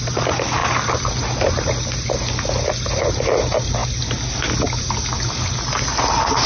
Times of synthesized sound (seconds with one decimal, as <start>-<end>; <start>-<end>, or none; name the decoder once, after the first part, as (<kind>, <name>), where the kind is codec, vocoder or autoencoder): none